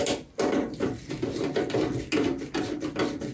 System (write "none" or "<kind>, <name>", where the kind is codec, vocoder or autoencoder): none